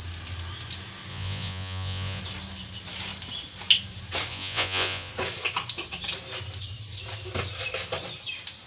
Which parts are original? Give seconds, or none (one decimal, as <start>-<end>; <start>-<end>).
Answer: 0.0-1.1; 2.2-4.3; 5.1-8.7